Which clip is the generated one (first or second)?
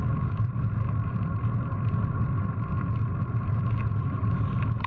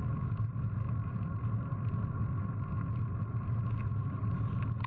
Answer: first